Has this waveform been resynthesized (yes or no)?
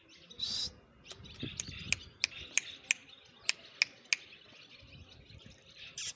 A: no